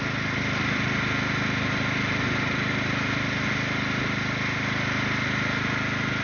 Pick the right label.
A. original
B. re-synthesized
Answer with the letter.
A